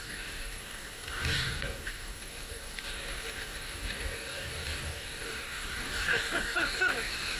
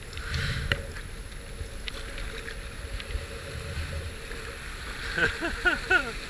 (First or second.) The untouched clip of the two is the second